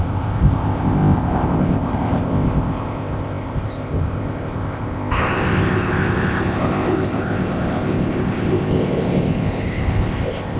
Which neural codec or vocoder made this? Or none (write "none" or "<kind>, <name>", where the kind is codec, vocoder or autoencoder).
codec, ZipCodec